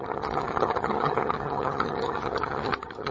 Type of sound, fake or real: fake